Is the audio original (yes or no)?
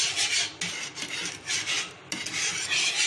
yes